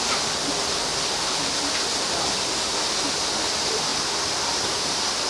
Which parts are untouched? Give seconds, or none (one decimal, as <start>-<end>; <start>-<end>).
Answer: 0.0-5.3